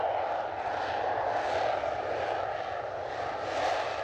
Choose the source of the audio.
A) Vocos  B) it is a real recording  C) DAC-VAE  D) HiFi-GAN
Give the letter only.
B